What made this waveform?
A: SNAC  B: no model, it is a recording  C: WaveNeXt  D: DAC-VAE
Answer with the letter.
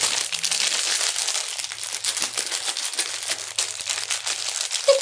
B